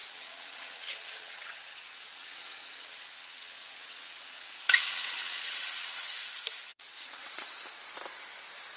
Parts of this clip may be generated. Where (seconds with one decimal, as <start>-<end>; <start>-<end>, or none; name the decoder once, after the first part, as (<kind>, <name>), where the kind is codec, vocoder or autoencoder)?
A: 0.0-4.5 (vocoder, WaveNeXt); 4.9-6.1; 6.7-7.8